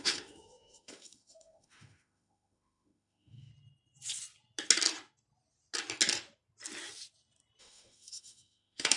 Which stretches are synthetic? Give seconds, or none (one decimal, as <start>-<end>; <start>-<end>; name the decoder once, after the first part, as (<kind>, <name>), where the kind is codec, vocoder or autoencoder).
0.0-3.5 (autoencoder, DAC-VAE); 7.6-9.0